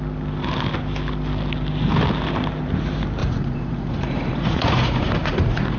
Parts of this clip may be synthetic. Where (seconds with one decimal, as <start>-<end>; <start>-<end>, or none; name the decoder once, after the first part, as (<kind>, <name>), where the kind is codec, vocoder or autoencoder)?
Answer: 3.2-5.8 (vocoder, Vocos)